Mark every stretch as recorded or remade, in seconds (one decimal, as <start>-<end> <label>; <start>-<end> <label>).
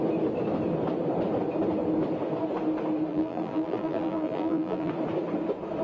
0.0-3.1 recorded; 3.1-4.9 remade; 4.9-5.8 recorded